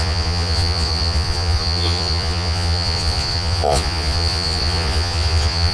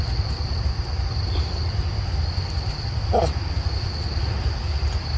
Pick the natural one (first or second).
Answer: second